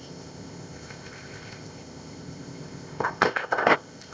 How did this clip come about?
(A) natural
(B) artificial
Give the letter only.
B